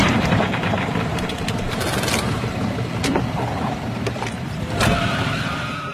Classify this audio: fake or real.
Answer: fake